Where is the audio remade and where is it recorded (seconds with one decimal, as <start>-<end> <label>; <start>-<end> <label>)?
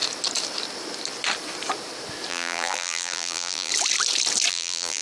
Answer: 0.0-2.3 recorded; 2.3-3.7 remade; 3.7-4.5 recorded; 4.5-5.0 remade